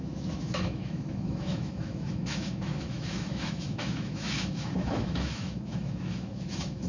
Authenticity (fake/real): fake